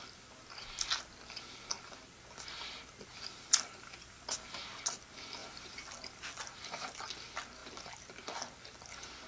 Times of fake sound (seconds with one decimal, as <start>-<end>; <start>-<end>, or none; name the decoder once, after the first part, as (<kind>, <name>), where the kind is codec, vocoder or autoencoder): 3.1-4.6 (vocoder, BigVGAN v2); 5.4-7.0